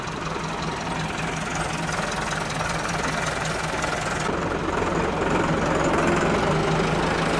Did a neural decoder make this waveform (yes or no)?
no